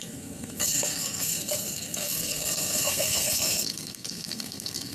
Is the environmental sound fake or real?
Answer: fake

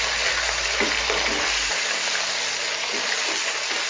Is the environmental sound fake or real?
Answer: real